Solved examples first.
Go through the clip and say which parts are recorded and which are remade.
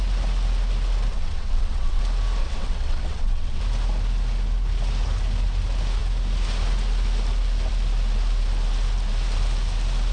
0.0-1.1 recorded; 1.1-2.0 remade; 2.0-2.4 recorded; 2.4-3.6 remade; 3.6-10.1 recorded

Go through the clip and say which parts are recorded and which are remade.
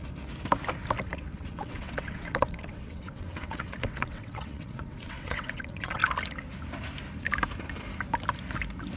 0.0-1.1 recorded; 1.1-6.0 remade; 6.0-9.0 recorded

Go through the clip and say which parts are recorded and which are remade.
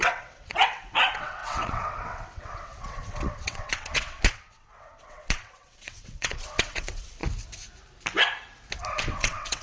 0.0-7.2 remade; 7.2-9.0 recorded; 9.0-9.6 remade